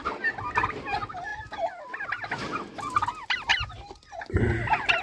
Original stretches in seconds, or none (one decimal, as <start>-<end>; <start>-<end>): 0.0-5.0